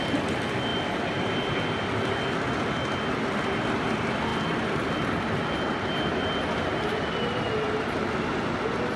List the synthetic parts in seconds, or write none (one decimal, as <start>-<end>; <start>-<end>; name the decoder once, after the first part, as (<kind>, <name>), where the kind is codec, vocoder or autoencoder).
none